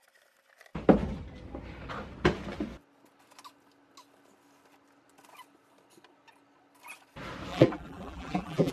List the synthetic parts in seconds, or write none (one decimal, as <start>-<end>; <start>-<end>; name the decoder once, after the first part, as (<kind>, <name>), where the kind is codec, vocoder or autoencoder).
7.5-8.7 (vocoder, BigVGAN v2)